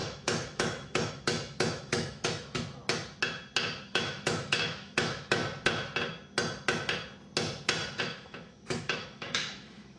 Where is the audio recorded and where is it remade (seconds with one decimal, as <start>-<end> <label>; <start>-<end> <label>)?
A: 0.0-2.8 remade; 2.8-3.9 recorded; 3.9-5.4 remade; 5.4-8.0 recorded; 8.0-10.0 remade